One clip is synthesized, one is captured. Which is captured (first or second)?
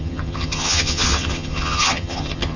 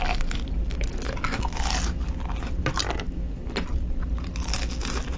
second